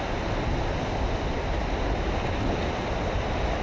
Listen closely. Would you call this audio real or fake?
real